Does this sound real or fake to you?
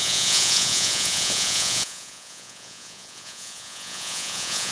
fake